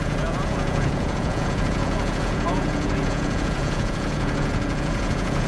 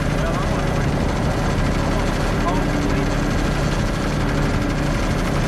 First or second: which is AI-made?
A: first